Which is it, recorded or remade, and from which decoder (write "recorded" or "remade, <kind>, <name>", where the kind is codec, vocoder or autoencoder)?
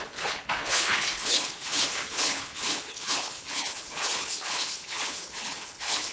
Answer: remade, codec, HILCodec